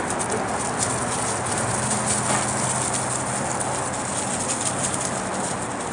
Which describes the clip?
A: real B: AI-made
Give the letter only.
A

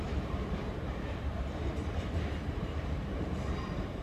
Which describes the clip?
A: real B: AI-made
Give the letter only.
B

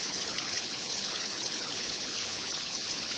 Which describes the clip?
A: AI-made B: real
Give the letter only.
A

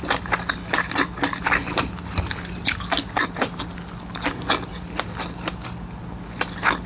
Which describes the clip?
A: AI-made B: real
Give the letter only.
B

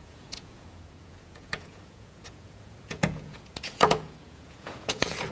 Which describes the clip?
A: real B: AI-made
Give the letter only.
B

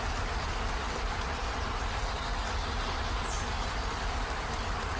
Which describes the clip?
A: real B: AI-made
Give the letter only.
A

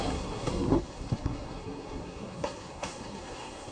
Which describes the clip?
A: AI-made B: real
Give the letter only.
A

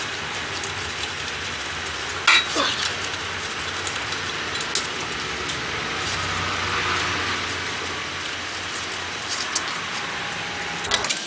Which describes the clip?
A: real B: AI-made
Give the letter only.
A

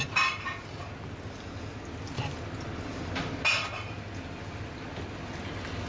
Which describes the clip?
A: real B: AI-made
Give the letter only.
A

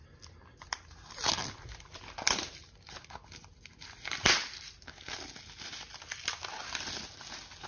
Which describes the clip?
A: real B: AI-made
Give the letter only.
A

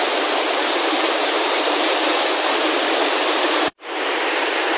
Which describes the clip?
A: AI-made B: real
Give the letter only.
A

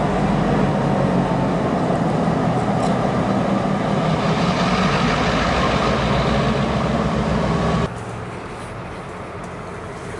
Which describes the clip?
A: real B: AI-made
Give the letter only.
A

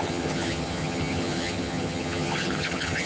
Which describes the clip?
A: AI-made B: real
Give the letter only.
A